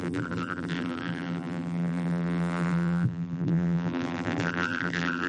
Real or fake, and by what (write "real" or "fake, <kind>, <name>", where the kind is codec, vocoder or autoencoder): fake, vocoder, BigVGAN v2